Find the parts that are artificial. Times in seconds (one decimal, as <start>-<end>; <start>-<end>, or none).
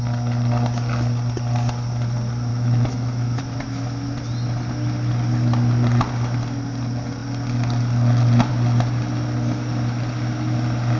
2.5-3.4